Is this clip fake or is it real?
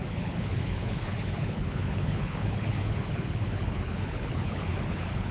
fake